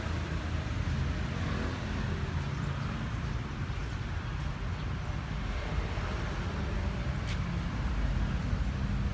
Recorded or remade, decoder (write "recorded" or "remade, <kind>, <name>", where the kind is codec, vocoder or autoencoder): recorded